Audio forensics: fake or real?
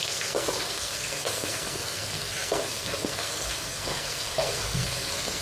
fake